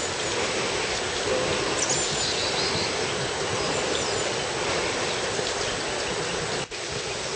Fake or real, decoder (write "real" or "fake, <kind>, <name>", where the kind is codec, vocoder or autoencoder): real